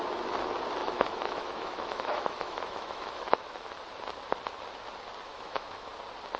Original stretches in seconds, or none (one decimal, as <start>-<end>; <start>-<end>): 0.0-0.8; 3.7-5.3; 5.9-6.4